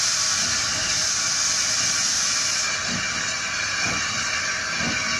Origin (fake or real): real